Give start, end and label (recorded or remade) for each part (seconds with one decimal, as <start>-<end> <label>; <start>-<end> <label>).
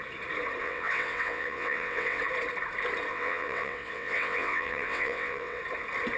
0.0-0.6 recorded; 0.6-2.2 remade; 2.2-3.1 recorded; 3.1-5.6 remade; 5.6-6.2 recorded